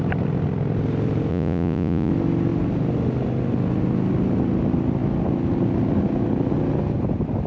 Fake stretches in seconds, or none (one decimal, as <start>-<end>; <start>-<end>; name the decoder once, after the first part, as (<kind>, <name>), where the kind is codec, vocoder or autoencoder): 1.3-2.1 (vocoder, Vocos)